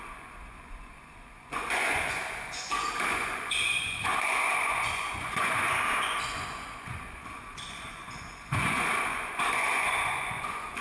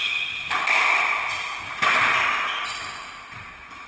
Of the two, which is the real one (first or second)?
second